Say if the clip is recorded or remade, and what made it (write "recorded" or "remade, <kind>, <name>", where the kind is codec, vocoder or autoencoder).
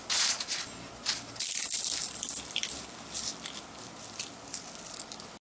recorded